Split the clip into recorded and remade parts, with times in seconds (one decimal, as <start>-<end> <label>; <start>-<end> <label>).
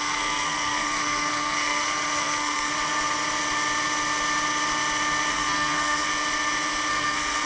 0.0-2.7 remade; 2.7-5.3 recorded; 5.3-6.1 remade; 6.1-6.9 recorded; 6.9-7.5 remade